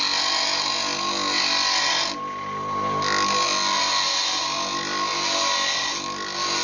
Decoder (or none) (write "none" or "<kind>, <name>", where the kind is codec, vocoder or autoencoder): none